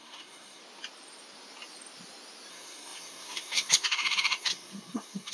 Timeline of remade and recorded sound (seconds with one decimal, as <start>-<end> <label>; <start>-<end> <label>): 0.0-0.6 remade; 0.6-2.5 recorded; 2.5-5.3 remade